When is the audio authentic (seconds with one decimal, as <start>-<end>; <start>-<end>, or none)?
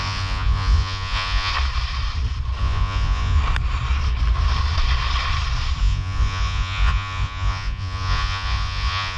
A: 1.5-2.6; 3.4-5.8